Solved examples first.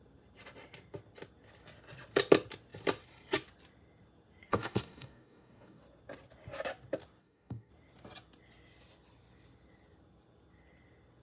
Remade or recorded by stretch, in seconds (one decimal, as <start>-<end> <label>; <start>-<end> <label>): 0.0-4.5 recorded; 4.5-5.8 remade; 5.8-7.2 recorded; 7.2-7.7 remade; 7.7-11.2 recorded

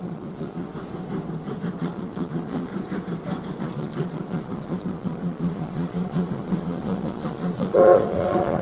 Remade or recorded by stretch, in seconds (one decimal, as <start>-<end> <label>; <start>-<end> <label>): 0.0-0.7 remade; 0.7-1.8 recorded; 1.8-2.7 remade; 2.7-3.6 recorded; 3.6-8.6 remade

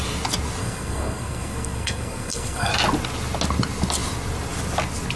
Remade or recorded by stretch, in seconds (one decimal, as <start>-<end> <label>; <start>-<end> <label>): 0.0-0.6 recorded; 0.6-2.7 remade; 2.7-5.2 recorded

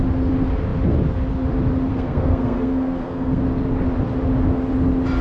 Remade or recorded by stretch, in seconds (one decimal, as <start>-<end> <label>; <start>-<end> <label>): 0.0-1.9 recorded; 1.9-3.4 remade; 3.4-5.2 recorded

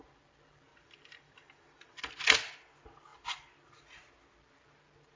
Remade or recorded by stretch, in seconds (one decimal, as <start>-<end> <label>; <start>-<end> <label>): 0.0-0.7 recorded; 0.7-2.1 remade; 2.1-5.2 recorded

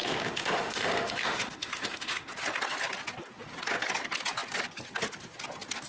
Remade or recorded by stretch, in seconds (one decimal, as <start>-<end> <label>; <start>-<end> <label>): 0.0-2.3 remade; 2.3-5.9 recorded